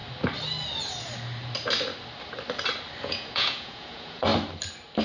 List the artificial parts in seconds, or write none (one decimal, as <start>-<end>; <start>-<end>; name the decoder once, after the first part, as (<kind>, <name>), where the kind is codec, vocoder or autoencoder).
3.0-4.3 (vocoder, Vocos)